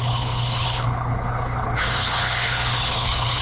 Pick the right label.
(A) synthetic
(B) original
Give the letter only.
A